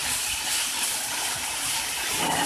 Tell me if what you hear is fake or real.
real